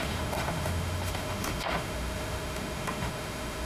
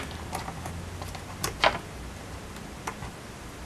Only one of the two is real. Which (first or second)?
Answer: second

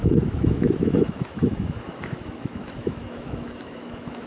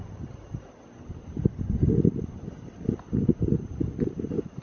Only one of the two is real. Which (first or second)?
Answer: second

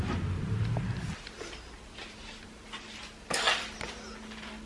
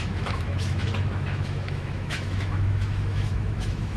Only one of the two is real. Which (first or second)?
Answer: first